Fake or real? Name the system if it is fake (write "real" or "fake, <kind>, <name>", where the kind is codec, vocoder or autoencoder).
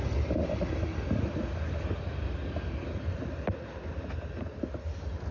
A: real